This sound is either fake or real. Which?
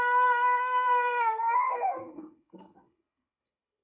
fake